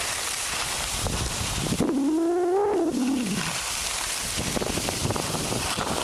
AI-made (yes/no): no